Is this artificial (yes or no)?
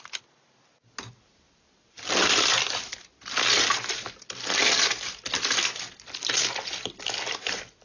no